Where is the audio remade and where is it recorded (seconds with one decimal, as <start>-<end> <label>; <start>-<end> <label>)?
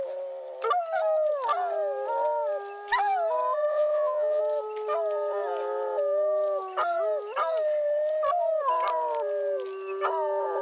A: 0.0-3.7 recorded; 3.7-4.4 remade; 4.4-10.6 recorded